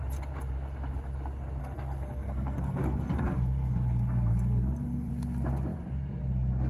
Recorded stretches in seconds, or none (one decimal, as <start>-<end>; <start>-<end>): 0.0-1.6; 5.1-6.7

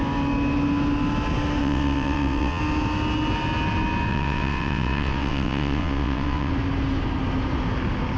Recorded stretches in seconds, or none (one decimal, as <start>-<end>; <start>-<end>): 0.0-1.6; 2.6-4.1; 6.5-8.2

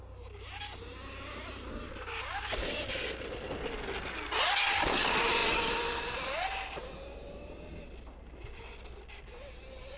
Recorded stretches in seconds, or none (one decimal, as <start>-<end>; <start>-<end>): 0.0-10.0

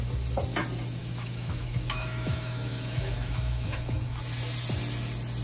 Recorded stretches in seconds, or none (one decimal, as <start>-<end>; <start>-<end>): 0.0-1.0; 4.2-5.4

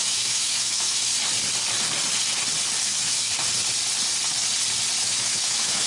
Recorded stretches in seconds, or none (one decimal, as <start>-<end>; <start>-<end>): 1.1-2.8; 3.3-5.0

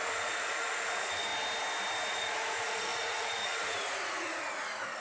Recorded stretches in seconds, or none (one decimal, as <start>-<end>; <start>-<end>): 1.3-2.1

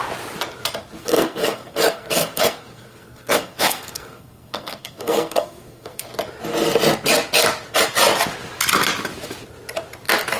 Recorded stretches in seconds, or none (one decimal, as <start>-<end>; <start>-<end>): 0.0-1.0; 6.1-10.4